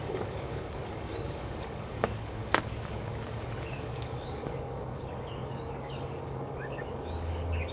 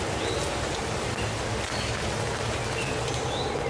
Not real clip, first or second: first